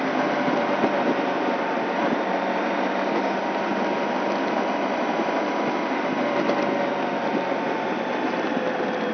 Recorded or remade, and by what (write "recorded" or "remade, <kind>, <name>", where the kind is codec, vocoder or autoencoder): recorded